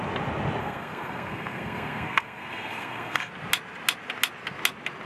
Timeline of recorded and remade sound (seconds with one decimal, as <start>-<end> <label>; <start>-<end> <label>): 0.0-0.6 recorded; 0.6-3.3 remade; 3.3-5.1 recorded